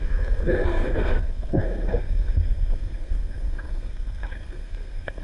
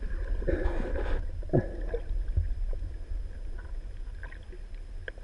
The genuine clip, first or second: second